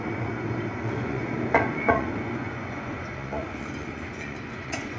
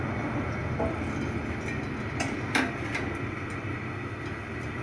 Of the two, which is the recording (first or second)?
second